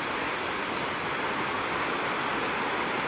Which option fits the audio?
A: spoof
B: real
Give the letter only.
B